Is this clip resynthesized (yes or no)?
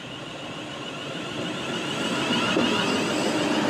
no